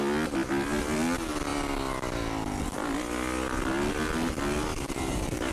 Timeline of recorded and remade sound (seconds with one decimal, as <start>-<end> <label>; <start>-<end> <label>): 0.0-4.7 recorded; 4.7-5.5 remade